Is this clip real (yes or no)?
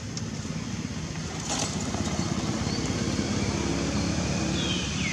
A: yes